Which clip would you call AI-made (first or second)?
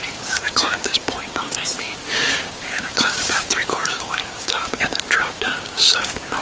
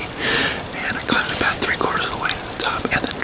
first